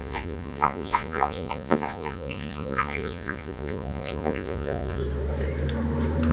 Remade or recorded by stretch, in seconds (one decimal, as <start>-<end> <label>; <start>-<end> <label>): 0.0-5.0 remade; 5.0-6.3 recorded